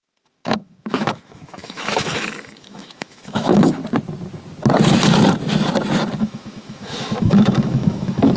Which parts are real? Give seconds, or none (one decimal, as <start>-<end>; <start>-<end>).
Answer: 3.8-6.2

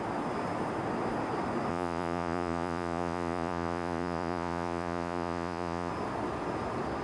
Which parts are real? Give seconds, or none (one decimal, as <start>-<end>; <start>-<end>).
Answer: 0.0-1.7; 5.9-7.0